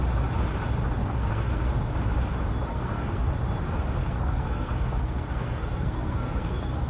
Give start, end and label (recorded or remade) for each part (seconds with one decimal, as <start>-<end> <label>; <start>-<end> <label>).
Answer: 0.0-1.0 recorded; 1.0-1.7 remade; 1.7-2.7 recorded; 2.7-3.3 remade; 3.3-4.0 recorded; 4.0-6.9 remade